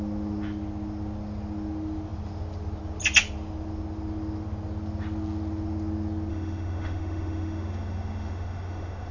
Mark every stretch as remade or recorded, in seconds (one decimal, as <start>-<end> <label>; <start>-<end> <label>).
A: 0.0-6.3 recorded; 6.3-9.1 remade